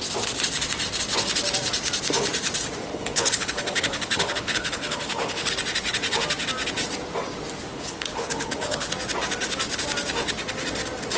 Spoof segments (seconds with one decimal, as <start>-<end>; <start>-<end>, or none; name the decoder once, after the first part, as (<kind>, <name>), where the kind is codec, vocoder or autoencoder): 2.9-5.5 (codec, HILCodec); 7.7-8.9